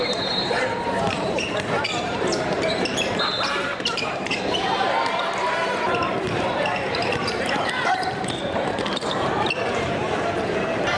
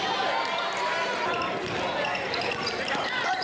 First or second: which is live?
second